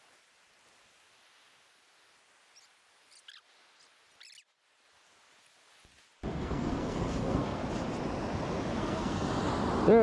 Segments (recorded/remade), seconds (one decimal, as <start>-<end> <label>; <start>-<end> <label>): 0.0-6.3 recorded; 6.3-7.6 remade; 7.6-8.7 recorded; 8.7-9.3 remade; 9.3-10.0 recorded